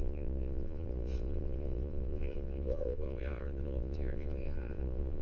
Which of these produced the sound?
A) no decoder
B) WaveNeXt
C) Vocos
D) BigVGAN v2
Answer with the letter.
C